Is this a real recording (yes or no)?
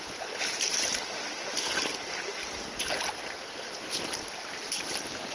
yes